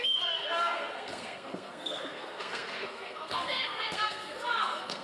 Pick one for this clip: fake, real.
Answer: fake